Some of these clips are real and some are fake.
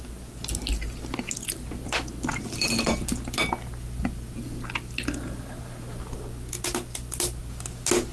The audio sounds real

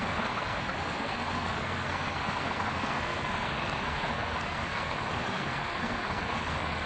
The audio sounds fake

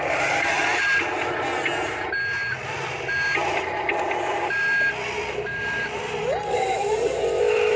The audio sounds real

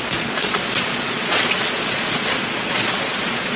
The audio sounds fake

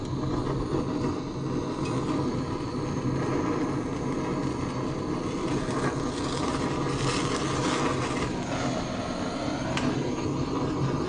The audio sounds real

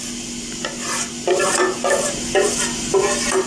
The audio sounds real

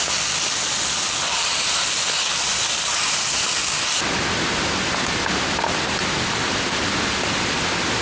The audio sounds real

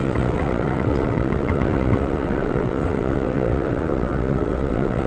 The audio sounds fake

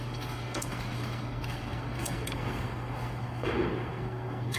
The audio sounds fake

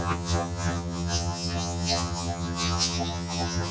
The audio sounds fake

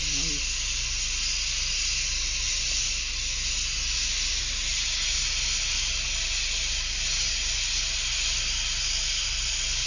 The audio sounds real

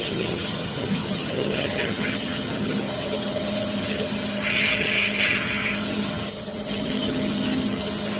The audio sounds fake